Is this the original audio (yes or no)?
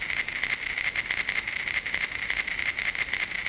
yes